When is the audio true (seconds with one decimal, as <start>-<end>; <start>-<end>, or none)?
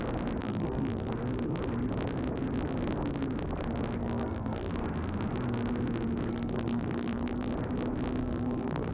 0.0-0.4; 1.1-4.0; 4.7-6.3; 7.5-8.2